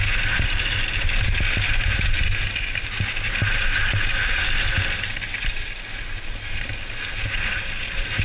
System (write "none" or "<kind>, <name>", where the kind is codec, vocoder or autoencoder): none